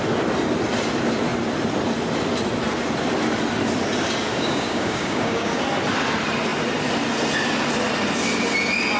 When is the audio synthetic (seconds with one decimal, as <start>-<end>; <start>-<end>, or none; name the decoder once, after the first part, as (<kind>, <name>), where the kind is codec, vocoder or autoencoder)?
4.3-5.6 (codec, DAC)